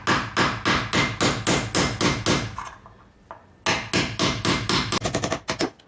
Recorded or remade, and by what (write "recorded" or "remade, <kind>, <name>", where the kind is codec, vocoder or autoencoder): recorded